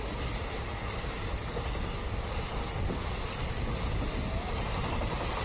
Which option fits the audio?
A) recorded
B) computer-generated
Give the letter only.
A